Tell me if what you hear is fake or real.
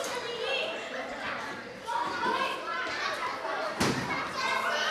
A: real